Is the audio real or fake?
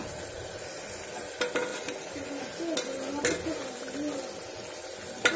real